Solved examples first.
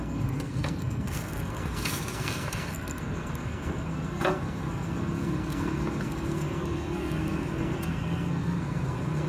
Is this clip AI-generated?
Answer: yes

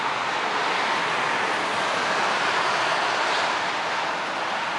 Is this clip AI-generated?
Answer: no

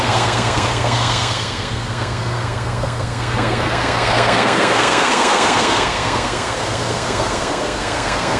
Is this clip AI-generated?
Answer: yes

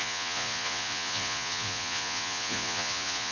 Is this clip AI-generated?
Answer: yes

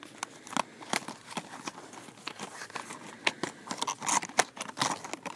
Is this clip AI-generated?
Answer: no